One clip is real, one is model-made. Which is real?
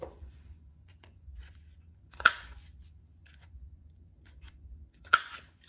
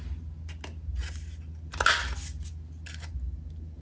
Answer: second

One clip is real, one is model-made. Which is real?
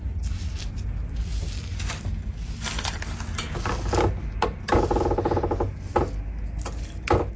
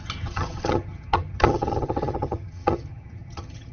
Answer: first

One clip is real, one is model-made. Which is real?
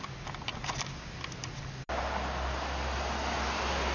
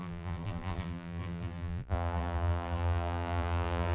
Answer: first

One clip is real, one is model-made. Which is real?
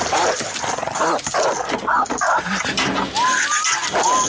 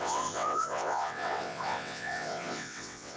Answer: first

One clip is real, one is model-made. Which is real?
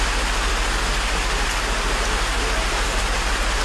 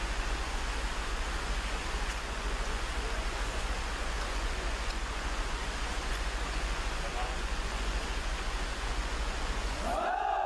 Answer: first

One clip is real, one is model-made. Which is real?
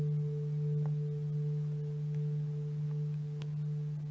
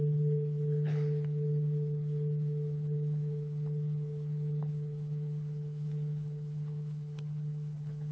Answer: first